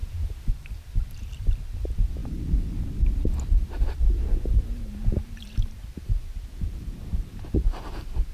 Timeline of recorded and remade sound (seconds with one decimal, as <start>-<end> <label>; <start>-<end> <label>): 0.0-0.5 recorded; 0.5-8.3 remade